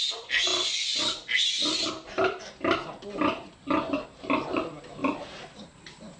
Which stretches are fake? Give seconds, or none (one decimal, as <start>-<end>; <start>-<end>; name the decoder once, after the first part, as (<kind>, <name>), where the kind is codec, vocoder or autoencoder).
5.0-6.2 (vocoder, BigVGAN v2)